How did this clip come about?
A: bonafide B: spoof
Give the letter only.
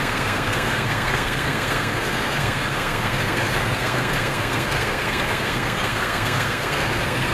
B